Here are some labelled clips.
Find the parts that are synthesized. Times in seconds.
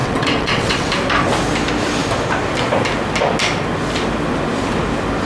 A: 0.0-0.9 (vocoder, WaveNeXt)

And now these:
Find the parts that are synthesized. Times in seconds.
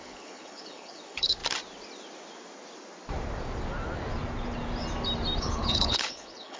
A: 0.0-1.4 (codec, HILCodec); 5.4-6.6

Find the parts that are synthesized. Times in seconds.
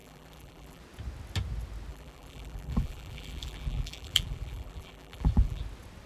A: 0.0-0.8 (vocoder, BigVGAN v2); 1.9-5.6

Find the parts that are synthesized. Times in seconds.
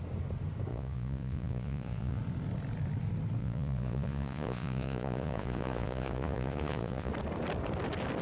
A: 0.7-2.2 (vocoder, Vocos); 3.4-7.1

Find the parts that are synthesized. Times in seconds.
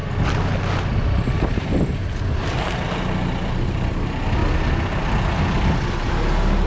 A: none